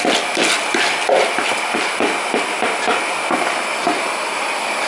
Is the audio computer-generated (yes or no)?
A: no